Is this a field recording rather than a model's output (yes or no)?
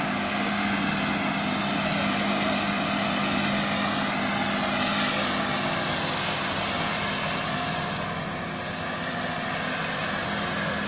yes